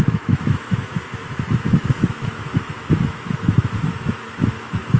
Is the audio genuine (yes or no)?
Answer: no